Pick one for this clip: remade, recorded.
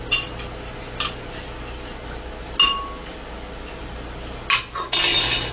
recorded